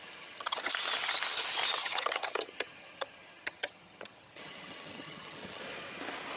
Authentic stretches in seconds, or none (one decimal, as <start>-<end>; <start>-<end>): 0.7-1.8; 5.6-6.4